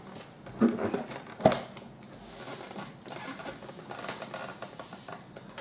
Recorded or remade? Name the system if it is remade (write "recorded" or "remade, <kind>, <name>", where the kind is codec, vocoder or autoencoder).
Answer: recorded